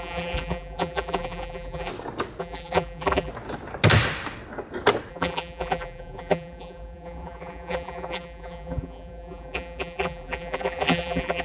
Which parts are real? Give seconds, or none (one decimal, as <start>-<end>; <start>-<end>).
1.9-2.4; 3.3-5.1